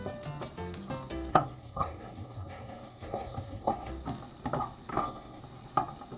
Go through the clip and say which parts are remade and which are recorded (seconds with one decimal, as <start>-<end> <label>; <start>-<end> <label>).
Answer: 0.0-1.3 recorded; 1.3-3.9 remade; 3.9-4.9 recorded; 4.9-5.4 remade; 5.4-6.2 recorded